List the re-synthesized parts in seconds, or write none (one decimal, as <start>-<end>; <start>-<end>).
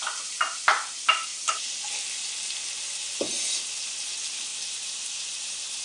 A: 4.5-5.8